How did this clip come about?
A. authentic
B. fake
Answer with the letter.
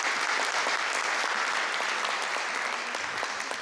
A